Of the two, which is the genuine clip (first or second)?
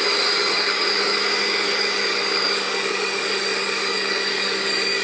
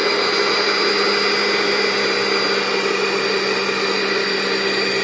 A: second